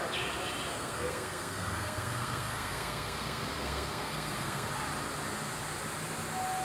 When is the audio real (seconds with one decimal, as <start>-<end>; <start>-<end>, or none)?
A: 0.0-0.7; 4.7-6.6

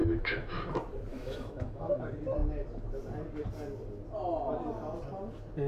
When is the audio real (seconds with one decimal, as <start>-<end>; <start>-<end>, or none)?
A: 0.6-1.1; 2.0-5.7

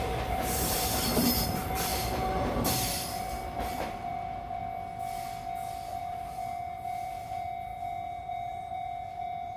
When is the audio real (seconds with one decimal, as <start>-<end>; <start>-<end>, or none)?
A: 4.6-6.0

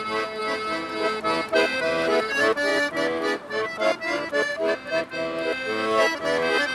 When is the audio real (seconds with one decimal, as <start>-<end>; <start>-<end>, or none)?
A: 0.0-2.7; 5.0-6.7

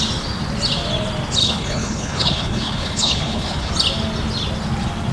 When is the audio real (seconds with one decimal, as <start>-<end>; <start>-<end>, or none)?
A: 0.0-1.4; 3.7-5.1

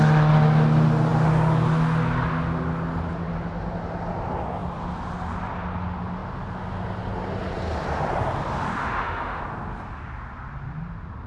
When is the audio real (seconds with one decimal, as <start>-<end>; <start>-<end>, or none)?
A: 0.0-8.8; 9.4-11.3